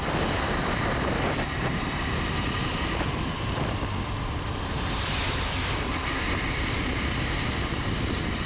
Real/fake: fake